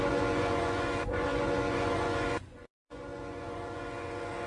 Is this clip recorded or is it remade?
remade